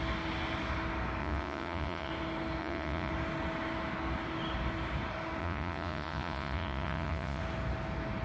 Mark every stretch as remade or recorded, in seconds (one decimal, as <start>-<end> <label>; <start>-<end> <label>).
0.0-1.2 recorded; 1.2-2.1 remade; 2.1-2.6 recorded; 2.6-3.1 remade; 3.1-5.4 recorded; 5.4-7.4 remade; 7.4-8.2 recorded